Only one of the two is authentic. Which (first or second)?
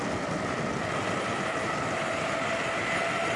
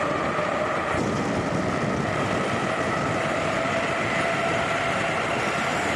first